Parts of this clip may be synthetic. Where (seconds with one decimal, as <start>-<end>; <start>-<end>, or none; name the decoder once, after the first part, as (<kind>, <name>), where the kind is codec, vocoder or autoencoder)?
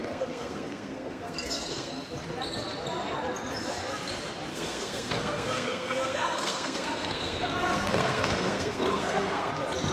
0.0-1.9 (codec, SNAC); 4.5-9.5